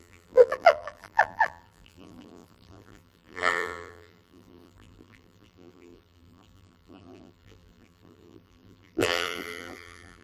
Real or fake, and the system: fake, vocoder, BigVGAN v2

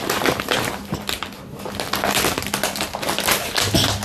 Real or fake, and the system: real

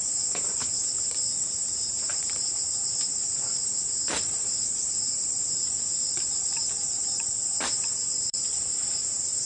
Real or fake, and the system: fake, vocoder, BigVGAN v2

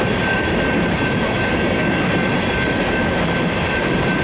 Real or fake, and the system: fake, vocoder, BigVGAN v2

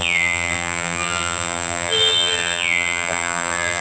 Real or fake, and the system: fake, vocoder, BigVGAN v2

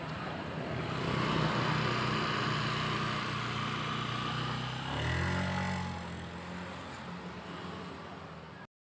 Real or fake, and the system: real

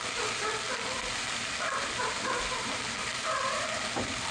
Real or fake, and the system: fake, vocoder, BigVGAN v2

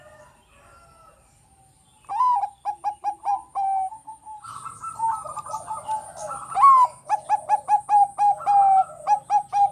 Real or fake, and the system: real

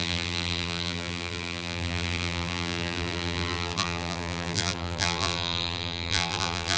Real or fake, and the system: fake, vocoder, BigVGAN v2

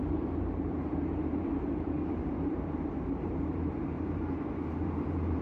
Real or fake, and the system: fake, vocoder, BigVGAN v2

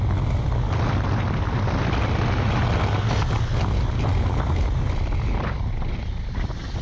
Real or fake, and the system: real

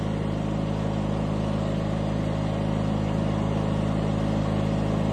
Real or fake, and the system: real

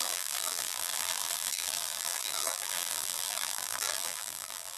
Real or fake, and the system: fake, vocoder, BigVGAN v2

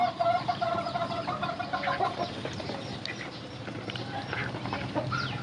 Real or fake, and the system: fake, vocoder, BigVGAN v2